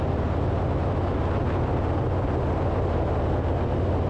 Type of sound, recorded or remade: recorded